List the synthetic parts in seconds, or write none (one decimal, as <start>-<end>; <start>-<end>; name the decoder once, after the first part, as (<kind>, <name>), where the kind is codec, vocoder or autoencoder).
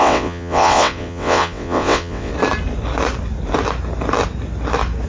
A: 0.0-2.3 (vocoder, WaveNeXt)